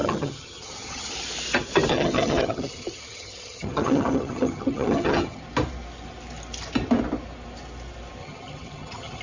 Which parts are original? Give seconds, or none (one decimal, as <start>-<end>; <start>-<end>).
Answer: 1.1-1.9; 5.4-8.2